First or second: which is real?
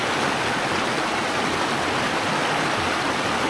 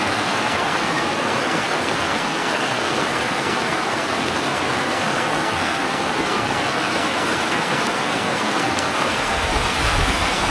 first